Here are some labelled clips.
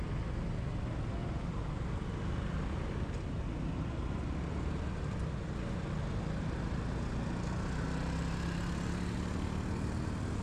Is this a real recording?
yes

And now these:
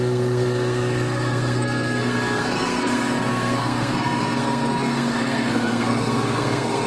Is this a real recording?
no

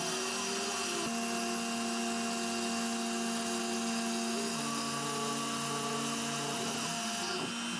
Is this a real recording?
yes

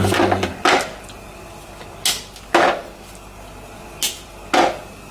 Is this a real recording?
yes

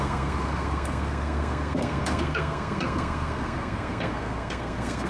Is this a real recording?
no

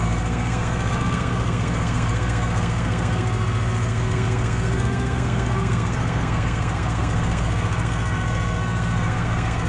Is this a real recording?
no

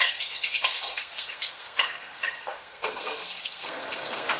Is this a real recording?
no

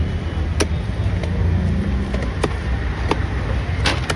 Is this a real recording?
yes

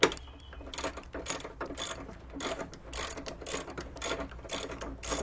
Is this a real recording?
yes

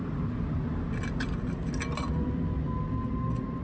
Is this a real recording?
yes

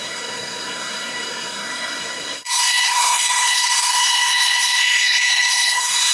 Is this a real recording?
no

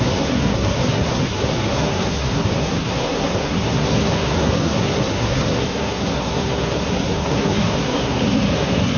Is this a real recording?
no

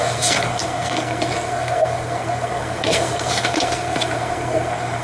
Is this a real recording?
no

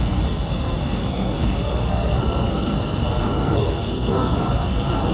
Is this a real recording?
no